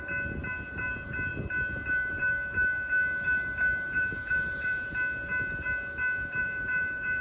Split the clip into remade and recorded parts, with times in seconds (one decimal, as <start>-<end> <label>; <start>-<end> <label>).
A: 0.0-3.9 recorded; 3.9-4.9 remade; 4.9-6.4 recorded; 6.4-7.2 remade